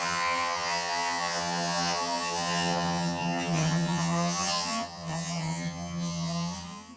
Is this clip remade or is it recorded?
remade